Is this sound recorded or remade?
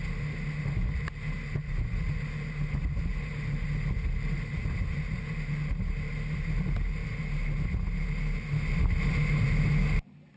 recorded